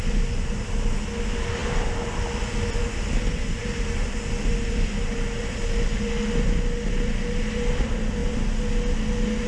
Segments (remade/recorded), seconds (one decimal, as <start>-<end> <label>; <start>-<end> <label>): 0.0-9.5 recorded